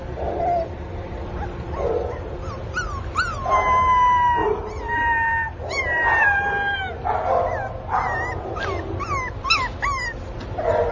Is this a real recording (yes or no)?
yes